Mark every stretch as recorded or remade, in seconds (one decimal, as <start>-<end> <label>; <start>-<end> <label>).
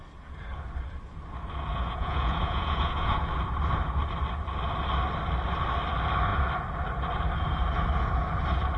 0.0-1.7 recorded; 1.7-3.2 remade; 3.2-8.8 recorded